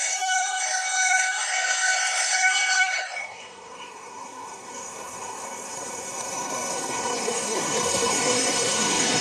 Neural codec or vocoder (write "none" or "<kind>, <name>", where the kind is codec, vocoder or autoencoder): codec, SNAC